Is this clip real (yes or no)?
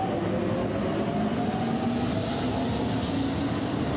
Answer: yes